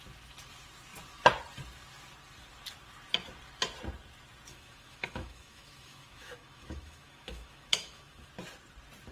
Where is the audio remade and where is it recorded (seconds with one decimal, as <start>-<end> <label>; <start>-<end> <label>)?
0.0-4.5 recorded; 4.5-8.3 remade; 8.3-9.1 recorded